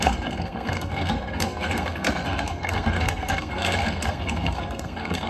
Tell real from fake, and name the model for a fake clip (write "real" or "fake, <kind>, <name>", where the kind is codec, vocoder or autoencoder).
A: fake, codec, SNAC